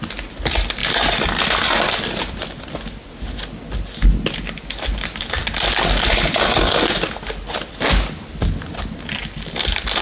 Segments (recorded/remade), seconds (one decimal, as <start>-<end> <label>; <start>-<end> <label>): 0.0-10.0 recorded